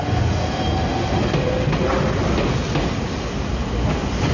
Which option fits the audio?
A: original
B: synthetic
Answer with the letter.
A